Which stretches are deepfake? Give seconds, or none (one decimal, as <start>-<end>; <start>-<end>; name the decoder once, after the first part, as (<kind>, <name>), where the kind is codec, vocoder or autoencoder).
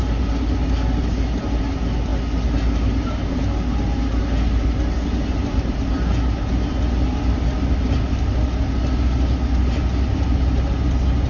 none